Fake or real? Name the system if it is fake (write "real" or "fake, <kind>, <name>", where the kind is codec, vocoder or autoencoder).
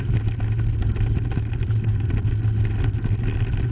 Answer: real